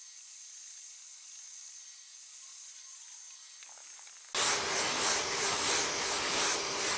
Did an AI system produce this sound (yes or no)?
no